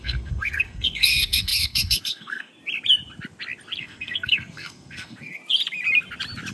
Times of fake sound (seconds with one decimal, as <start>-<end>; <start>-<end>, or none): 0.0-2.5; 3.8-5.4